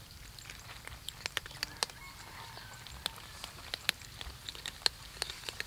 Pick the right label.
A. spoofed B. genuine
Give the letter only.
B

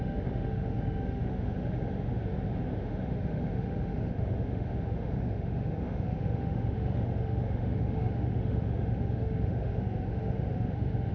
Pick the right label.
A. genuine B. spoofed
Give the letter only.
B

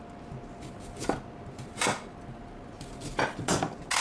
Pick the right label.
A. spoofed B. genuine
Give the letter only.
B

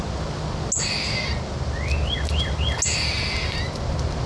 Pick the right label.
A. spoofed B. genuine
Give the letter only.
B